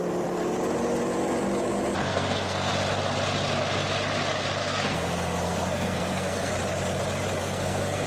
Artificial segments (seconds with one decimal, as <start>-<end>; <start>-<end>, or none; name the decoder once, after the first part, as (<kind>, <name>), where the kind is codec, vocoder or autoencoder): 2.0-2.7 (codec, SNAC); 4.6-6.5; 7.4-8.1